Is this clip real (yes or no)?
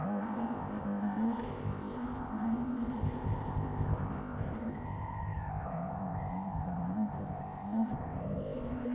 no